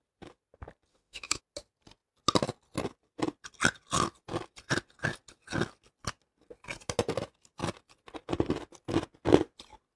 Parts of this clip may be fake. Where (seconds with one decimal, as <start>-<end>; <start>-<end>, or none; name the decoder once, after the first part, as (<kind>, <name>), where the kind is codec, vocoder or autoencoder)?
0.9-1.4 (autoencoder, DAC-VAE)